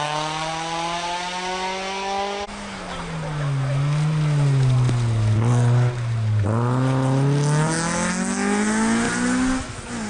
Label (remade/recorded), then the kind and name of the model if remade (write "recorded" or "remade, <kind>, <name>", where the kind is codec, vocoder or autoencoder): recorded